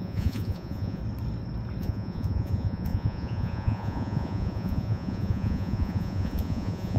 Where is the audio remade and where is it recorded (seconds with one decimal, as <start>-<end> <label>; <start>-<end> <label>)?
0.0-1.0 remade; 1.0-1.8 recorded; 1.8-7.0 remade